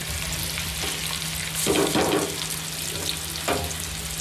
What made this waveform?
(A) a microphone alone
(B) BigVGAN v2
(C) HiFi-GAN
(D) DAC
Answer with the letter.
A